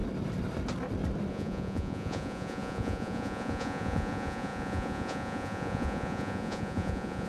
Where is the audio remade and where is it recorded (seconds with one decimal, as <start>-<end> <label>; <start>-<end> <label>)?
0.0-1.3 recorded; 1.3-7.3 remade